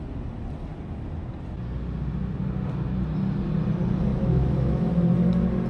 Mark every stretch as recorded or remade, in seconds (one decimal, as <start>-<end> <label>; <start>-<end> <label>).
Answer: 0.0-4.1 recorded; 4.1-4.9 remade; 4.9-5.7 recorded

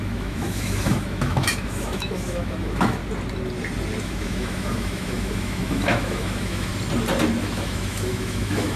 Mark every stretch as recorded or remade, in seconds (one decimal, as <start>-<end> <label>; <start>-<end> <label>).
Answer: 0.0-3.0 remade; 3.0-4.0 recorded; 4.0-6.7 remade; 6.7-7.4 recorded; 7.4-8.8 remade

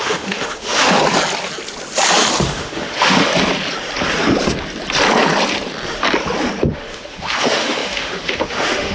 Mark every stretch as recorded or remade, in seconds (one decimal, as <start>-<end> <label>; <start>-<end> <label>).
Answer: 0.0-1.0 remade; 1.0-2.4 recorded; 2.4-3.3 remade; 3.3-6.7 recorded; 6.7-8.9 remade

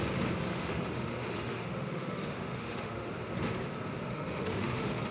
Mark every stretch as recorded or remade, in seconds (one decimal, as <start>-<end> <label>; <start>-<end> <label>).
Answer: 0.0-0.5 recorded; 0.5-3.1 remade; 3.1-4.0 recorded; 4.0-5.1 remade